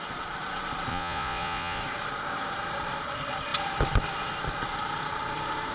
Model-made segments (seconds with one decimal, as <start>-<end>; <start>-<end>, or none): 0.9-1.8